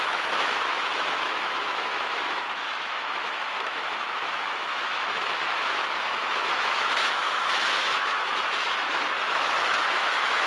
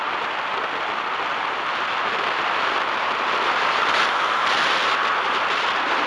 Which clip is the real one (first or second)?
second